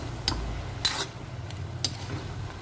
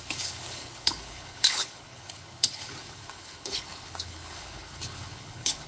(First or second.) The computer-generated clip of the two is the second